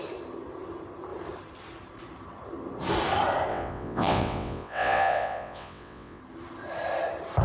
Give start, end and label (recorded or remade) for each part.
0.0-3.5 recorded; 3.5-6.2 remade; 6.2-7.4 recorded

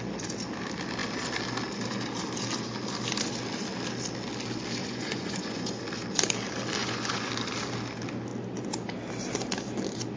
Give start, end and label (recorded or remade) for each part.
0.0-4.8 recorded; 4.8-5.8 remade; 5.8-6.8 recorded; 6.8-7.3 remade; 7.3-10.2 recorded

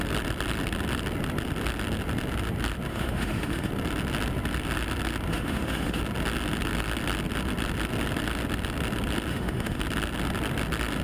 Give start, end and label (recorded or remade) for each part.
0.0-2.9 recorded; 2.9-3.7 remade; 3.7-5.3 recorded; 5.3-6.0 remade; 6.0-9.3 recorded; 9.3-9.8 remade; 9.8-11.0 recorded

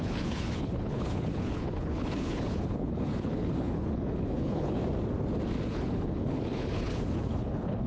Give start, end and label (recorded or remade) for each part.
0.0-4.8 remade; 4.8-5.6 recorded; 5.6-7.9 remade

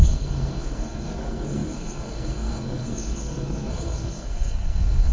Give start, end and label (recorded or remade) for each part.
0.0-5.1 remade

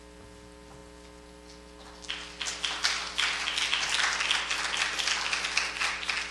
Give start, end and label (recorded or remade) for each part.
0.0-6.3 recorded

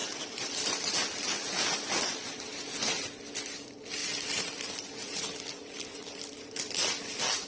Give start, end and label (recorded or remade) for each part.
0.0-0.8 remade; 0.8-4.0 recorded; 4.0-5.7 remade; 5.7-7.5 recorded

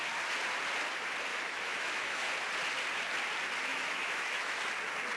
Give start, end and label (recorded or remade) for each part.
0.0-1.3 recorded; 1.3-2.3 remade; 2.3-3.7 recorded; 3.7-4.6 remade; 4.6-5.2 recorded